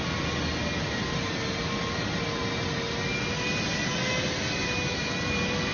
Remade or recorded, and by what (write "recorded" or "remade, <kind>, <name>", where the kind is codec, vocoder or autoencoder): recorded